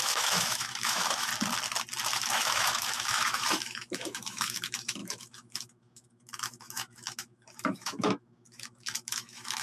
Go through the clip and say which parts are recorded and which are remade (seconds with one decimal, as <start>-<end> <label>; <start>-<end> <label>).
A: 0.0-1.3 remade; 1.3-2.2 recorded; 2.2-9.6 remade